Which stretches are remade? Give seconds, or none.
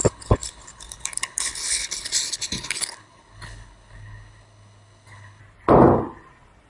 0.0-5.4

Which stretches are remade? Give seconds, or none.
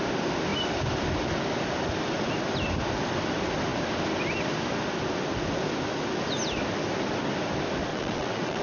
7.9-8.6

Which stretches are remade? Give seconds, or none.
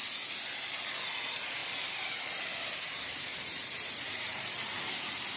1.1-5.4